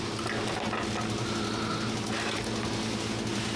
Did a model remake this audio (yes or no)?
no